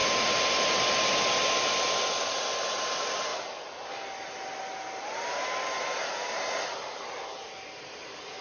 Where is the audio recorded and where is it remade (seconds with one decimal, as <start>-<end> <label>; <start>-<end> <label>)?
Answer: 0.0-1.7 remade; 1.7-8.4 recorded